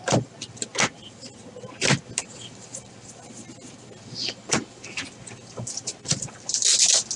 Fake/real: real